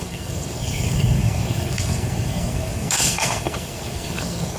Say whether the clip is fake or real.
fake